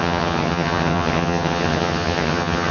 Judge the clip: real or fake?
fake